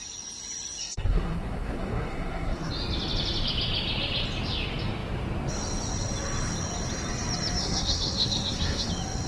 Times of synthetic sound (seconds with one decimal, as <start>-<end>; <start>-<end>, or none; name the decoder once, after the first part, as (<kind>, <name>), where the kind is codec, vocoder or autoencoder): 0.8-2.7 (codec, SNAC); 7.6-8.9